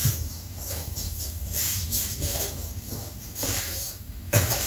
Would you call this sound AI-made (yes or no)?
yes